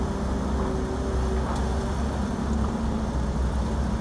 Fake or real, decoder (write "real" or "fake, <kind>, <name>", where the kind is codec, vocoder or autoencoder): real